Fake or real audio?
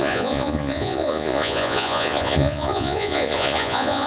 fake